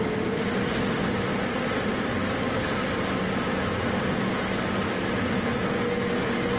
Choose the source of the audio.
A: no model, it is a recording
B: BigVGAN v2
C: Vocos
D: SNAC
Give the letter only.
A